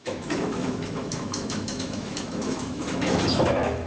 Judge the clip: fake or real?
fake